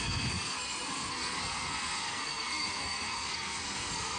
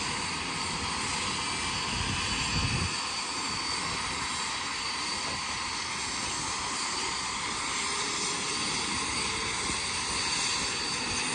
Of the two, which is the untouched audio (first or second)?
second